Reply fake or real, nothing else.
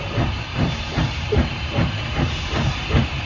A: fake